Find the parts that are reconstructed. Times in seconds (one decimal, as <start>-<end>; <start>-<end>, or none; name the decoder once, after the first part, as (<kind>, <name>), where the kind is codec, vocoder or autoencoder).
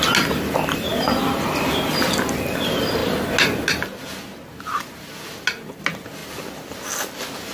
none